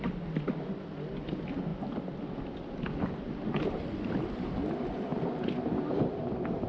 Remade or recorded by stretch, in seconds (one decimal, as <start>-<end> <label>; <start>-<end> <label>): 0.0-6.7 recorded